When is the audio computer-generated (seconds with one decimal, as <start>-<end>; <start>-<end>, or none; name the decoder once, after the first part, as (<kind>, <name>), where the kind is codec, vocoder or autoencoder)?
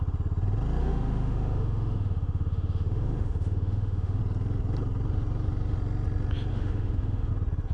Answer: 0.8-4.2 (autoencoder, DAC-VAE); 6.5-7.3